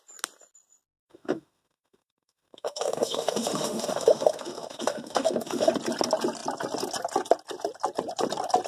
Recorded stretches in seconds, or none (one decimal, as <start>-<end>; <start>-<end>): 0.0-1.0; 5.7-8.7